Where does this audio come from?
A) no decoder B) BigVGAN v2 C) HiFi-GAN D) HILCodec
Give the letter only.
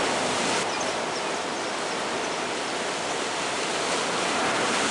A